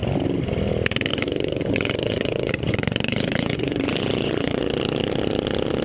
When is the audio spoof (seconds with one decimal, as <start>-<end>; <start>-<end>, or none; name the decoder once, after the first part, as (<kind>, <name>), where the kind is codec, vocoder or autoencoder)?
1.1-4.6 (vocoder, Vocos)